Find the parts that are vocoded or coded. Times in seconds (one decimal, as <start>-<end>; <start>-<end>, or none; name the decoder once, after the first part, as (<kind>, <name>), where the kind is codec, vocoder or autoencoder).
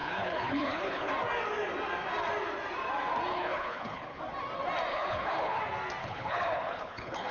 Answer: 0.0-1.1 (codec, HILCodec); 3.3-4.2; 4.9-5.6; 6.0-7.3